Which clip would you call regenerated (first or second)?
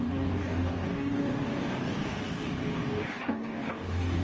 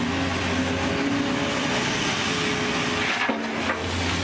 first